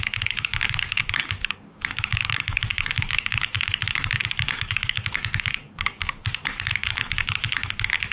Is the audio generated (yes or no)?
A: yes